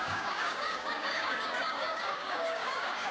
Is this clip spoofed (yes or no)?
yes